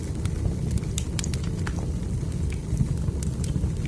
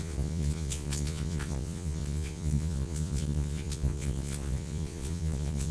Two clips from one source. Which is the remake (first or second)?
second